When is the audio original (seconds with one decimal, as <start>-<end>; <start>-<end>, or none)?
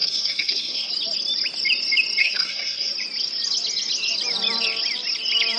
0.9-2.2; 2.9-5.6